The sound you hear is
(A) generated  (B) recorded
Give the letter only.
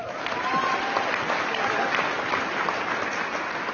B